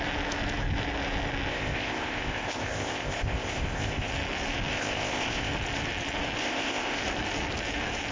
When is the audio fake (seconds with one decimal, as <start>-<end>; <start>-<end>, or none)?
1.5-4.1; 4.7-5.5; 6.4-7.0